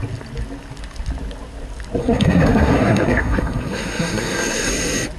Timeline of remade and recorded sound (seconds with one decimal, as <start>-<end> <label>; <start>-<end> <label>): 0.0-2.0 recorded; 2.0-4.7 remade; 4.7-5.2 recorded